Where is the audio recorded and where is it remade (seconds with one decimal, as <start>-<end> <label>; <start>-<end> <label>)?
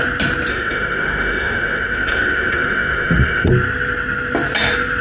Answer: 0.0-0.5 recorded; 0.5-3.5 remade; 3.5-5.0 recorded